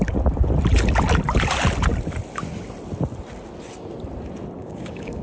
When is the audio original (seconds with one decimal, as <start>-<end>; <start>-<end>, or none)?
0.0-4.6

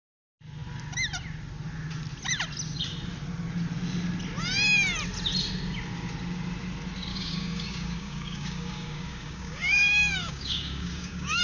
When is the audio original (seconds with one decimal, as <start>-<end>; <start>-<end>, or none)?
0.0-7.1